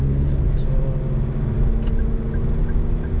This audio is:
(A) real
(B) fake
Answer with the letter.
A